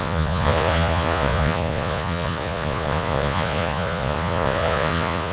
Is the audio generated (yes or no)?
yes